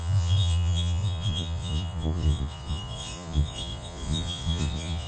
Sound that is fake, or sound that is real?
fake